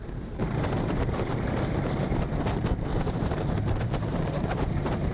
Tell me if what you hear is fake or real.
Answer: fake